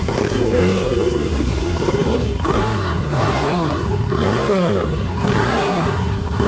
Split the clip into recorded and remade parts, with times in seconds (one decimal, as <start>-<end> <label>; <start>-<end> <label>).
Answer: 0.0-6.5 remade

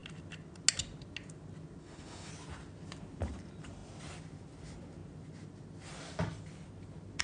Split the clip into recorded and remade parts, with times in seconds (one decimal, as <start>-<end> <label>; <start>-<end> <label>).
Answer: 0.0-1.8 recorded; 1.8-2.3 remade; 2.3-7.2 recorded

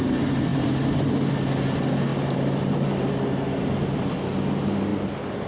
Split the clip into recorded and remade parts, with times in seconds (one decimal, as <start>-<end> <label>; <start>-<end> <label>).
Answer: 0.0-0.5 recorded; 0.5-1.1 remade; 1.1-2.1 recorded; 2.1-4.1 remade; 4.1-4.9 recorded; 4.9-5.5 remade

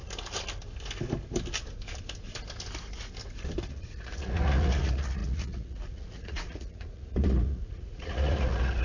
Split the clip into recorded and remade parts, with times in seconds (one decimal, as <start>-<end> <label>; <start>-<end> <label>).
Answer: 0.0-3.7 recorded; 3.7-8.8 remade